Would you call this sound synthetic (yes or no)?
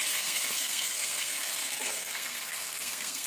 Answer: yes